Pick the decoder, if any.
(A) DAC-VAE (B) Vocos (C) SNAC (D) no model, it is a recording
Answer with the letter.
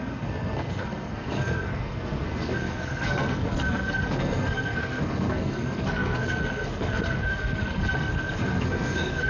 C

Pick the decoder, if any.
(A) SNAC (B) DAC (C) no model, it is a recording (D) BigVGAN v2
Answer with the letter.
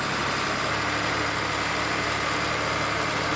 C